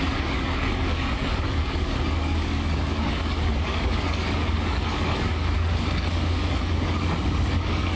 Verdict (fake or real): fake